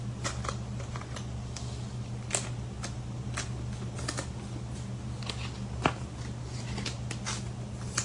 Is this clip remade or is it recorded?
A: recorded